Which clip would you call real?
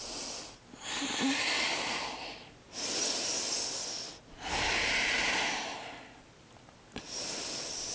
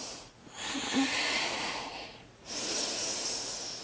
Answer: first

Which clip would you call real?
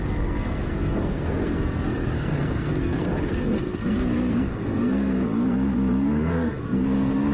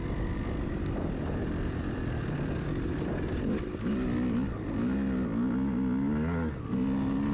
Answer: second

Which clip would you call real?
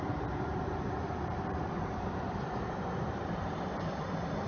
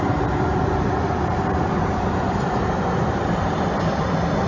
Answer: second